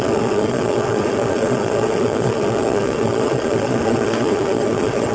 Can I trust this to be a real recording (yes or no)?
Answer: no